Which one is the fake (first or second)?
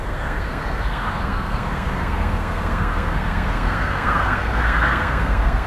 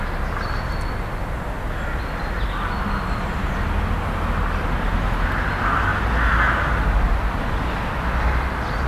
first